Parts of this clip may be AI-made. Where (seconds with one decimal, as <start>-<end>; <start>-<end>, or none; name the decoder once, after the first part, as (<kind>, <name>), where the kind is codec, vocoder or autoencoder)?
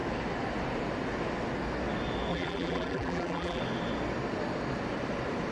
2.3-3.6 (vocoder, BigVGAN v2)